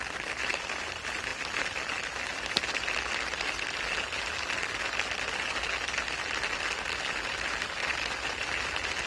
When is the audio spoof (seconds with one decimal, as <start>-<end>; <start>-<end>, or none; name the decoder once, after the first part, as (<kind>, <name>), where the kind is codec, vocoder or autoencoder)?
none